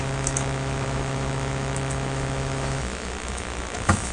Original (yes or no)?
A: no